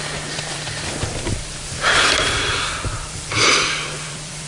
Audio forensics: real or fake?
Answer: fake